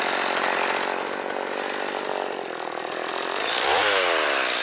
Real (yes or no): yes